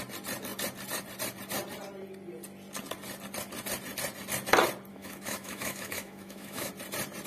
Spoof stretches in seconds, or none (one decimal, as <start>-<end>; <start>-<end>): 4.9-6.7